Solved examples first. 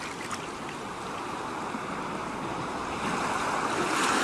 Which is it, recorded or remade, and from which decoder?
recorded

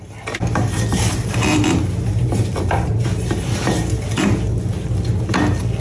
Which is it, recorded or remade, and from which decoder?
recorded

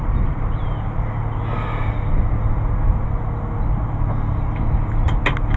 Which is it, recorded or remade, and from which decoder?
recorded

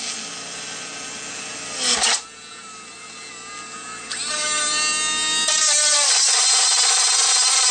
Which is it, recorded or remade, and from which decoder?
recorded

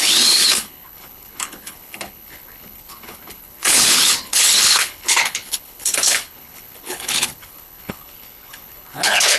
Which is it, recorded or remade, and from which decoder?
remade, codec, HILCodec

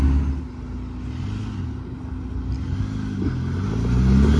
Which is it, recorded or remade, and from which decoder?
recorded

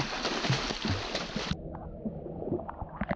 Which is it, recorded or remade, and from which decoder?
recorded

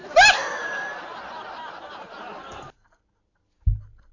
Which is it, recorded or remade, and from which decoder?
recorded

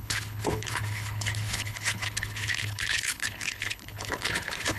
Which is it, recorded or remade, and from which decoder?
remade, codec, HILCodec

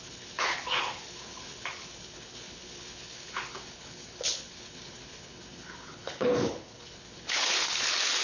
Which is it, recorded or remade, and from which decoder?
remade, codec, HILCodec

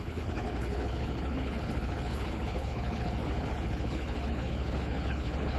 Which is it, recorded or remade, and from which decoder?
remade, codec, HILCodec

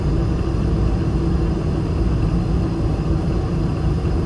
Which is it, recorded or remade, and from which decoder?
recorded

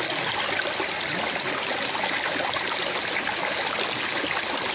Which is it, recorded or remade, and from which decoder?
recorded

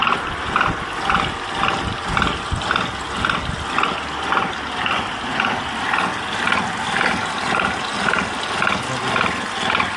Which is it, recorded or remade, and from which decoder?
recorded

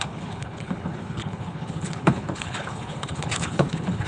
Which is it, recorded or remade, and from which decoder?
remade, codec, HILCodec